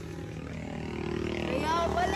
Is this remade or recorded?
recorded